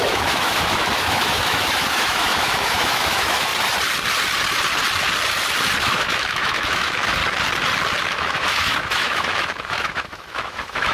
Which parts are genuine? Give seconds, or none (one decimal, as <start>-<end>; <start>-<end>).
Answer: 3.5-5.8; 7.2-8.0